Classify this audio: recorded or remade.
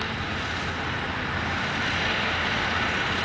recorded